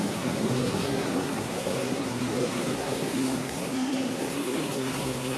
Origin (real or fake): fake